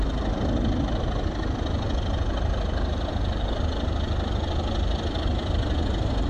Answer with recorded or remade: recorded